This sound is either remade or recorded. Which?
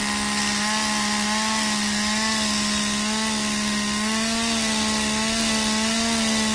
recorded